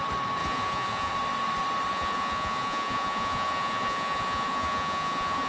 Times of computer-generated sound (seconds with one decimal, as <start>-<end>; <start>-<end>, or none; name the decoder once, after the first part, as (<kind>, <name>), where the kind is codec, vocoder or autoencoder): 0.4-1.1 (vocoder, Vocos); 1.9-5.5